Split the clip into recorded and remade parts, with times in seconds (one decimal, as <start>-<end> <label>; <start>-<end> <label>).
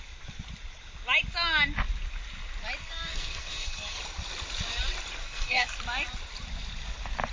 0.0-2.8 recorded; 2.8-4.0 remade; 4.0-5.2 recorded; 5.2-5.7 remade; 5.7-7.3 recorded